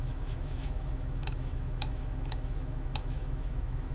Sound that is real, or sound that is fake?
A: fake